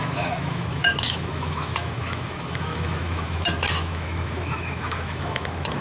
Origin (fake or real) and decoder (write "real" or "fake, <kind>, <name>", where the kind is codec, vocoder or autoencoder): fake, autoencoder, DAC-VAE